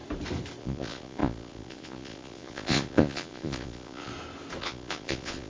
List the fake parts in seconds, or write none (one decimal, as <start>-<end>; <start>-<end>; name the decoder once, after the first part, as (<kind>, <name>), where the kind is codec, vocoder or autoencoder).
0.6-4.1 (vocoder, Vocos); 4.6-5.5